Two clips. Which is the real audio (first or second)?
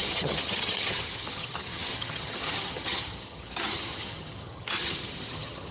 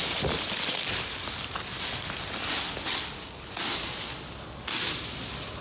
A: second